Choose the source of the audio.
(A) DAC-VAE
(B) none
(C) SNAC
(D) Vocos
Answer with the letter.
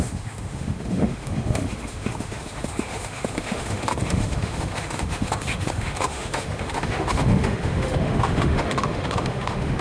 A